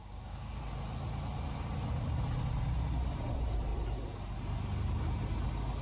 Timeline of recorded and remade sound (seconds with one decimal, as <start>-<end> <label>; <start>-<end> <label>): 0.0-0.6 remade; 0.6-5.8 recorded